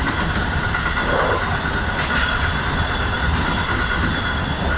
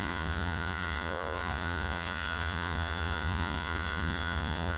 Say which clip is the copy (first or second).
second